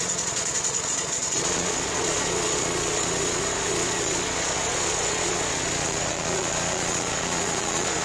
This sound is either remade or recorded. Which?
remade